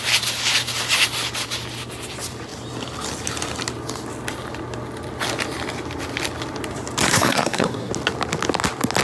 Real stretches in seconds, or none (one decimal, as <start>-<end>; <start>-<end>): 0.0-7.1; 7.9-9.0